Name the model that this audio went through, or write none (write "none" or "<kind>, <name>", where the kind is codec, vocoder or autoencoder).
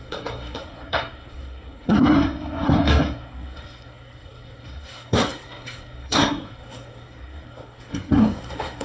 codec, SNAC